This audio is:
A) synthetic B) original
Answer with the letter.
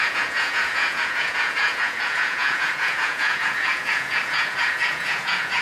A